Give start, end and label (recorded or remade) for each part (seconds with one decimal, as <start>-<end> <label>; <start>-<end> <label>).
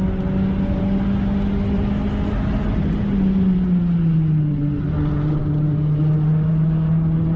0.0-7.4 recorded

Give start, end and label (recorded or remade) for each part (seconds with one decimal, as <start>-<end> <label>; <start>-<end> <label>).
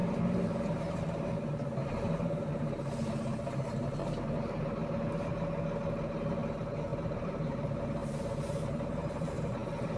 0.0-5.1 remade; 5.1-6.9 recorded; 6.9-9.3 remade; 9.3-10.0 recorded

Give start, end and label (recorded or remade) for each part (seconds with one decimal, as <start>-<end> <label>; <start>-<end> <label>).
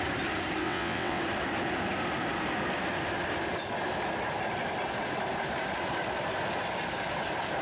0.0-0.6 recorded; 0.6-1.2 remade; 1.2-7.6 recorded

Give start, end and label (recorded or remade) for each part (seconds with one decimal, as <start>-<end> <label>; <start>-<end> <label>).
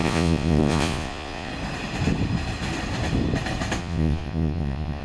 0.0-1.5 remade; 1.5-3.8 recorded; 3.8-5.0 remade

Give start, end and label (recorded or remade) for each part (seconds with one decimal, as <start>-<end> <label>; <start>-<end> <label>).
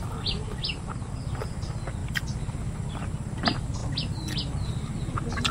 0.0-5.5 recorded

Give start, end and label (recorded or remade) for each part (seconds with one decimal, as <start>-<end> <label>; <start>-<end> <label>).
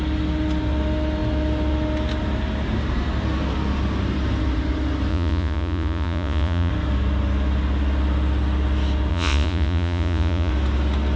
0.0-5.1 recorded; 5.1-6.7 remade; 6.7-9.1 recorded; 9.1-10.5 remade; 10.5-11.2 recorded